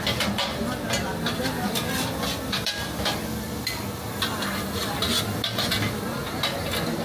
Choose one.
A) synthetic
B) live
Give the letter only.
B